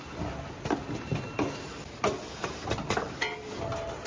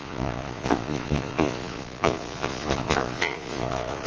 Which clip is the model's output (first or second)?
second